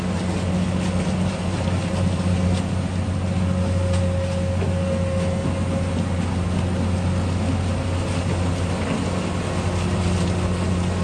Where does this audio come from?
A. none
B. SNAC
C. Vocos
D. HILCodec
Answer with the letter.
A